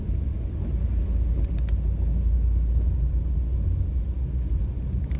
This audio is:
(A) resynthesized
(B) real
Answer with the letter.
B